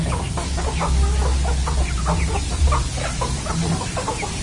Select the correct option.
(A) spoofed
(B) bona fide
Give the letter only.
B